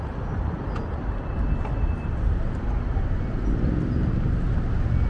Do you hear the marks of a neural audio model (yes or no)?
no